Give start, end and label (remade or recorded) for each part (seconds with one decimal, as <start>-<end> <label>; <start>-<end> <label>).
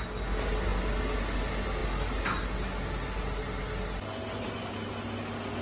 0.0-5.6 recorded